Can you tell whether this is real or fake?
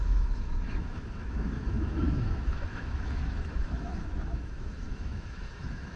fake